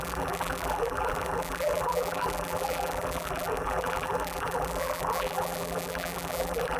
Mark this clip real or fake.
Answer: fake